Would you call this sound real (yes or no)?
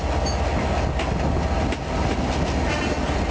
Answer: yes